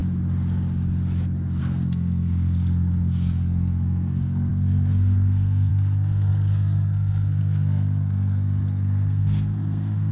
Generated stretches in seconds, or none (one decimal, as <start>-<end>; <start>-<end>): 1.6-10.1